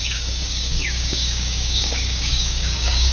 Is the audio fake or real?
fake